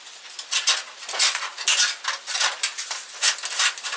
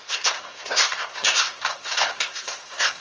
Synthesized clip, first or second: second